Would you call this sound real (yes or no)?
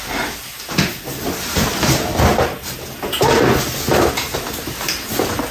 yes